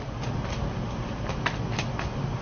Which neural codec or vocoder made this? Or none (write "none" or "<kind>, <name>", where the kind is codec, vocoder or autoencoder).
none